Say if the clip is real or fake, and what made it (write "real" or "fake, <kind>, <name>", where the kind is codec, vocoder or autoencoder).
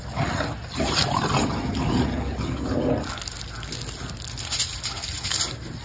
real